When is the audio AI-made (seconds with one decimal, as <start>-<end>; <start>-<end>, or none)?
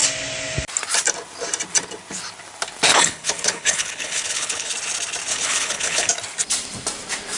2.9-4.7; 5.3-6.1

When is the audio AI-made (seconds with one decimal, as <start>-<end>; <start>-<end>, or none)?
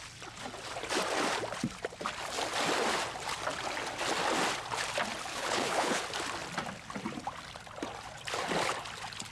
5.3-6.0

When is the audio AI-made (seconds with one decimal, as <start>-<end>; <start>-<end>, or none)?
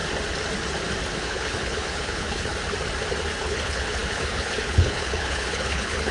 1.1-2.5; 3.4-6.1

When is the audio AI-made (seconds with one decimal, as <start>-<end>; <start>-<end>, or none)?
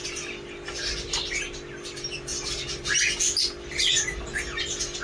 none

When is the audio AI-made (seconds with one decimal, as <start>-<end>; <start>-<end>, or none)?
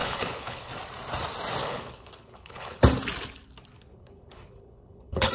0.0-0.7; 1.6-2.8; 3.9-5.3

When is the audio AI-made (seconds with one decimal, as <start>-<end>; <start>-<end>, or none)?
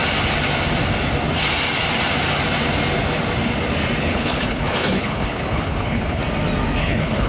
4.0-6.2; 6.8-7.3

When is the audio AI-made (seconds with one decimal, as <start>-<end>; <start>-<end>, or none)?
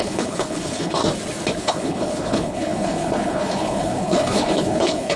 0.0-1.0; 1.6-5.2